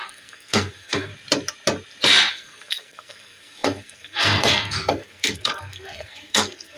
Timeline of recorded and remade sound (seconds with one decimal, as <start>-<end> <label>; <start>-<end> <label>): 0.0-1.1 remade; 1.1-2.3 recorded; 2.3-6.8 remade